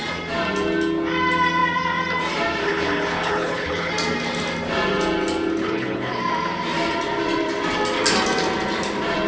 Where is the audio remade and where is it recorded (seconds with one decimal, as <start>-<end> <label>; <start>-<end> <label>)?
0.0-2.6 recorded; 2.6-3.9 remade; 3.9-5.6 recorded; 5.6-6.2 remade; 6.2-9.3 recorded